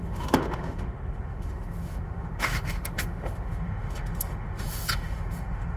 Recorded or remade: remade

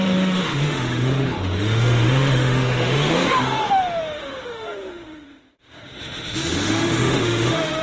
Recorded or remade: remade